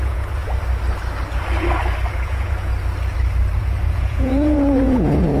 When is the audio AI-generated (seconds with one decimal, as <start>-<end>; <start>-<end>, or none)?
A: 0.0-0.4; 2.1-2.7; 3.6-5.4